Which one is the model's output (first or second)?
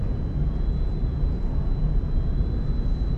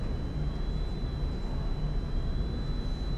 first